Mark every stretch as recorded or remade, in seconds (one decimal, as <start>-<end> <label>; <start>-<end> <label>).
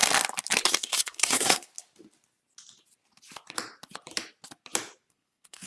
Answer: 0.0-0.7 recorded; 0.7-1.7 remade; 1.7-5.1 recorded; 5.1-5.7 remade